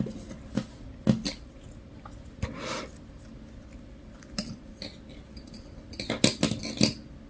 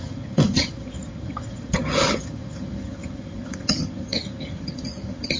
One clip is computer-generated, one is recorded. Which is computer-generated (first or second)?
second